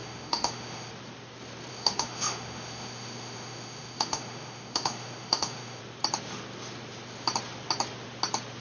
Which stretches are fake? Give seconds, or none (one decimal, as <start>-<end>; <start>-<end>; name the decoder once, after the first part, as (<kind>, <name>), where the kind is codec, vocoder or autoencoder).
0.0-0.9 (autoencoder, DAC-VAE); 1.7-5.8